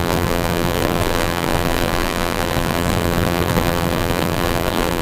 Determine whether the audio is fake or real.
fake